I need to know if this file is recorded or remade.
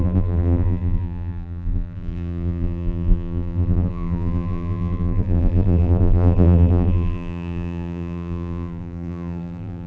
remade